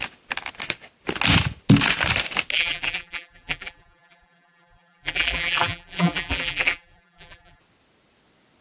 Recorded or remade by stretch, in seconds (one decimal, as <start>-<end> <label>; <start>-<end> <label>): 0.0-2.5 recorded; 2.5-7.6 remade; 7.6-8.6 recorded